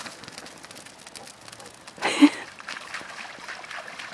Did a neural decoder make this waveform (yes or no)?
no